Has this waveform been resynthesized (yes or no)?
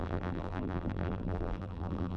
yes